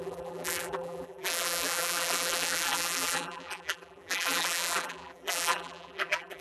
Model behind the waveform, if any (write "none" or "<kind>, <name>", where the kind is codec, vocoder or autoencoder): vocoder, BigVGAN v2